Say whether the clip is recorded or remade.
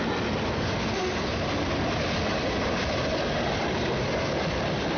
recorded